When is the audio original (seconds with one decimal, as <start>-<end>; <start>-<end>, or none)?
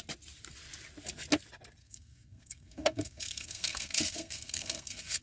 0.0-1.8